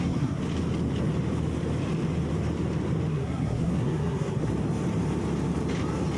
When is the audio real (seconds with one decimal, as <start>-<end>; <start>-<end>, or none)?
0.4-3.1; 4.5-6.2